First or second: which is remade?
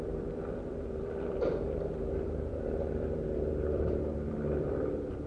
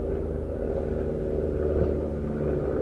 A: first